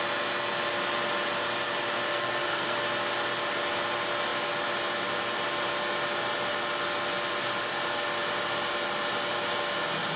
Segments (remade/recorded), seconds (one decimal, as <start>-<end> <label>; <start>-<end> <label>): 0.0-2.1 recorded; 2.1-2.8 remade; 2.8-10.2 recorded